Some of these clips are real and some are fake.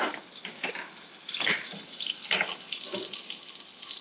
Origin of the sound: real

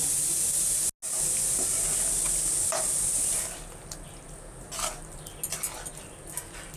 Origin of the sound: real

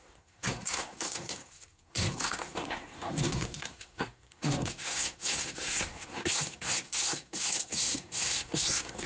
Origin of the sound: fake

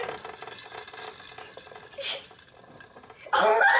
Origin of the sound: real